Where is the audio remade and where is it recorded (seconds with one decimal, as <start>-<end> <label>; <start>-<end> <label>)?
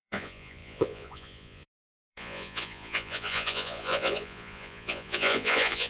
0.0-5.9 remade